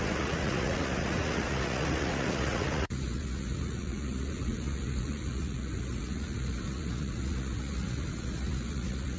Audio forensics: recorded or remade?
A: remade